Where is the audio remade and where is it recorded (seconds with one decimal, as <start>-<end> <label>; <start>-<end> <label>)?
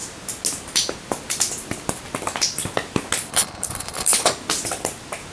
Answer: 0.0-3.3 recorded; 3.3-4.3 remade; 4.3-5.3 recorded